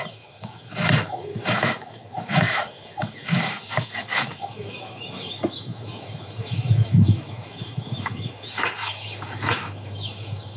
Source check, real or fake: fake